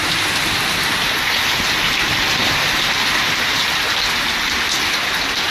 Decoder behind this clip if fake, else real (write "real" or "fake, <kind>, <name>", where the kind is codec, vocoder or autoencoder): real